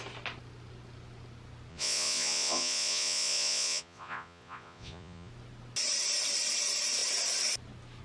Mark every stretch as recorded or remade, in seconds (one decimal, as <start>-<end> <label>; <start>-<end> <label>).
0.0-1.7 recorded; 1.7-5.3 remade; 5.3-8.0 recorded